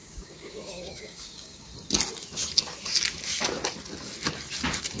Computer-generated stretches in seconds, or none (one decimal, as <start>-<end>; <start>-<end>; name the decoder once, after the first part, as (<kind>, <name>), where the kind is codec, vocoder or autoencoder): 0.0-1.7 (codec, DAC)